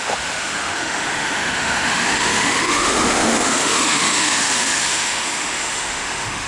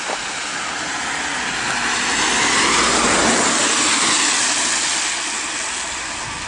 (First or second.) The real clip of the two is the second